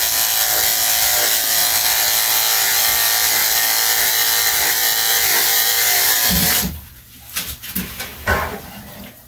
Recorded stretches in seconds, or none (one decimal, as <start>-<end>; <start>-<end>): 0.0-5.1; 7.6-9.3